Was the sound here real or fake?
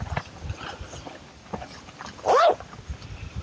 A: real